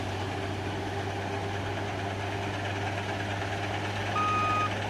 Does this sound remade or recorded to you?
recorded